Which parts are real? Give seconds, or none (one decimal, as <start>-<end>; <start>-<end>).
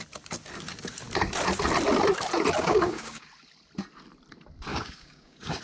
0.0-2.6; 3.3-4.7